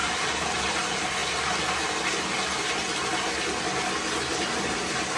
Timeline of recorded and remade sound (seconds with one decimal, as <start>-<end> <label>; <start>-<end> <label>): 0.0-1.2 remade; 1.2-4.3 recorded; 4.3-5.2 remade